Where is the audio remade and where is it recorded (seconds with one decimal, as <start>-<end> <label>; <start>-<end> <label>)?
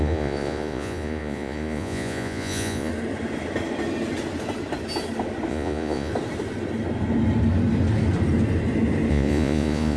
0.0-2.9 remade; 2.9-5.5 recorded; 5.5-6.1 remade; 6.1-9.1 recorded; 9.1-10.0 remade